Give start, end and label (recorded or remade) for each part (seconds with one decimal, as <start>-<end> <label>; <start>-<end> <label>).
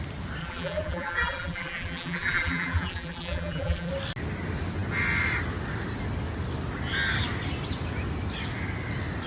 0.0-0.4 recorded; 0.4-3.9 remade; 3.9-9.3 recorded